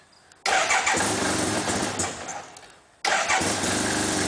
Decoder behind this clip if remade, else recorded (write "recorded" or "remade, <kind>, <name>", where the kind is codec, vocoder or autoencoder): recorded